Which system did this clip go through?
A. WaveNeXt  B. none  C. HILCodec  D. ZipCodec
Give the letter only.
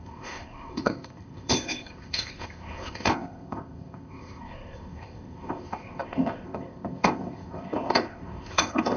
D